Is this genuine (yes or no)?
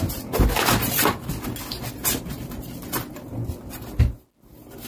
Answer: yes